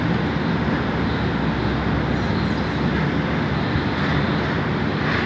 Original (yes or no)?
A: yes